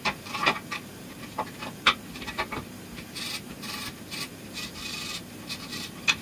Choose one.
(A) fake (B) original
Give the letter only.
A